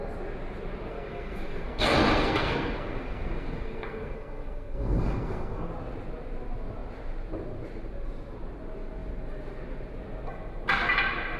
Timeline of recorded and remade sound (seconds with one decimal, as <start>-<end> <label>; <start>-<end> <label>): 0.0-0.9 recorded; 0.9-5.7 remade; 5.7-11.4 recorded